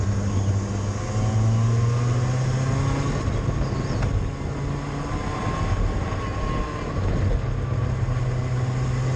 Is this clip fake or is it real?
real